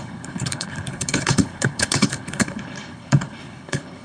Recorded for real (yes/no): no